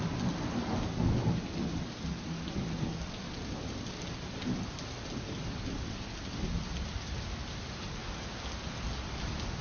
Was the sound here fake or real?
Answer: real